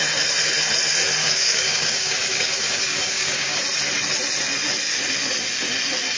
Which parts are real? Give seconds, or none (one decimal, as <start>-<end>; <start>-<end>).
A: 0.0-1.2; 3.6-6.2